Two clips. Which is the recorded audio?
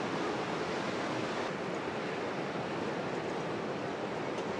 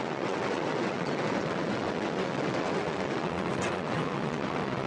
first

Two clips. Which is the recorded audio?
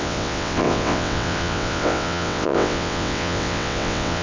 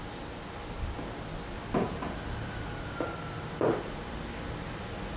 second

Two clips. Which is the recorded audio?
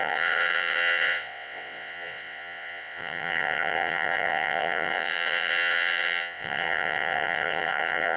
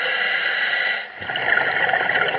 second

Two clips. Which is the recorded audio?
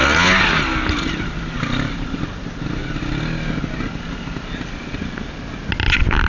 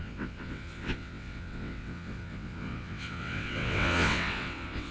first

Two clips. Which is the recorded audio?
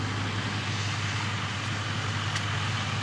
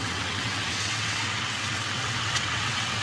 first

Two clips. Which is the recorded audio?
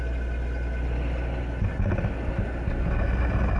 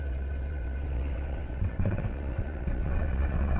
first